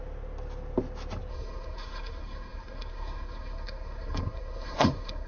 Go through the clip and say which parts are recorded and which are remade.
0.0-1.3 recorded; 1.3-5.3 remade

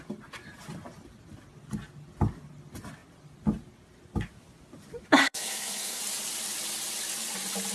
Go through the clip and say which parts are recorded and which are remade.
0.0-5.2 recorded; 5.2-6.0 remade; 6.0-7.7 recorded

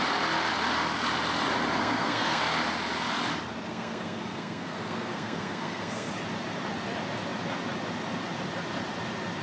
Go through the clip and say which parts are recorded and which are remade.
0.0-1.8 recorded; 1.8-2.4 remade; 2.4-3.7 recorded; 3.7-6.1 remade; 6.1-9.4 recorded

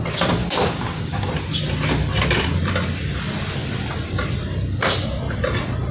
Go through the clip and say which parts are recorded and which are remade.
0.0-0.4 recorded; 0.4-1.3 remade; 1.3-5.9 recorded